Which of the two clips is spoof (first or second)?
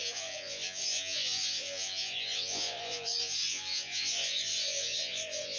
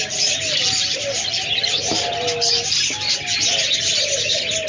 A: first